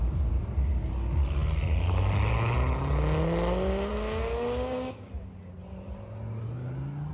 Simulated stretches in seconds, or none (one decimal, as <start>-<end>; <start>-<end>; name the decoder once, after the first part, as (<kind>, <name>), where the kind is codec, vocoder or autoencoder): 3.9-5.1 (codec, DAC)